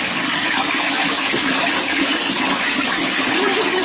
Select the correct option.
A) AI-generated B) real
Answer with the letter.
A